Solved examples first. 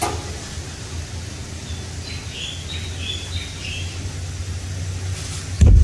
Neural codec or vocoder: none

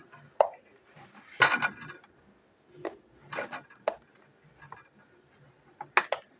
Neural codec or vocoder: none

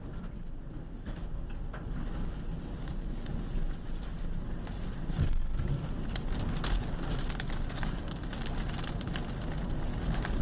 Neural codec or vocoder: none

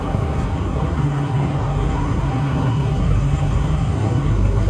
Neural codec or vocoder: codec, SNAC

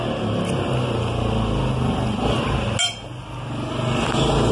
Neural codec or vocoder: none